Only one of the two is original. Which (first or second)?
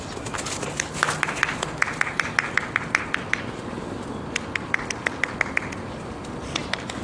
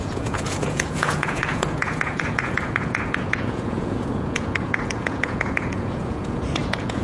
first